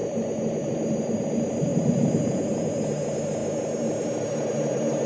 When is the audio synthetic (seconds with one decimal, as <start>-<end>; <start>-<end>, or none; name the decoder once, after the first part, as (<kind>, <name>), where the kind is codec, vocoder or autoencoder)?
none